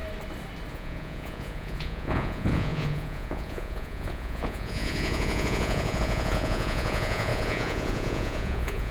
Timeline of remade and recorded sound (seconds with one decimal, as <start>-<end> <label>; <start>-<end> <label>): 0.0-0.7 recorded; 0.7-8.9 remade